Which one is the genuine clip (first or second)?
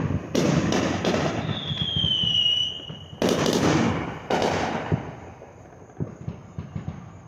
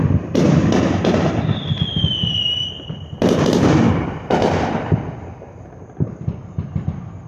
first